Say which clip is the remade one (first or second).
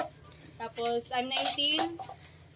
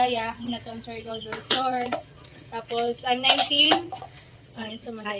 second